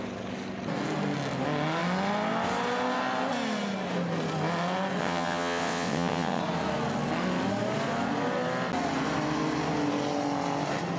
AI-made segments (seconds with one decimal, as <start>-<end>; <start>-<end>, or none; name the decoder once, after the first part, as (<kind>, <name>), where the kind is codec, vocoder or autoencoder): 5.0-6.4 (vocoder, WaveNeXt)